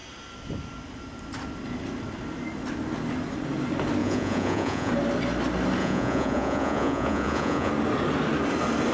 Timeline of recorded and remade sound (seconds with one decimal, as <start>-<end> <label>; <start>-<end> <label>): 0.0-4.0 recorded; 4.0-4.9 remade; 4.9-5.8 recorded; 5.8-7.7 remade; 7.7-8.9 recorded